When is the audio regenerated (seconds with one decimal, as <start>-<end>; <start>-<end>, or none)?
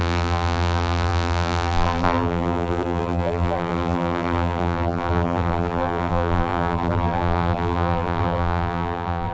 0.0-9.3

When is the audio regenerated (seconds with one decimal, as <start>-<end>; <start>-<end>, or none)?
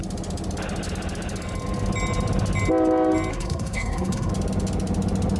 3.3-4.3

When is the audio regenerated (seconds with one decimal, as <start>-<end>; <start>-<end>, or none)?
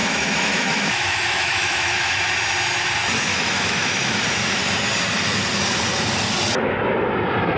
0.0-2.2; 3.3-4.2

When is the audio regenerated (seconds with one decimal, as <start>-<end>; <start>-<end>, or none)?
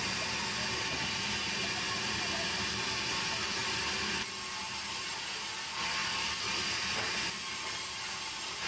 none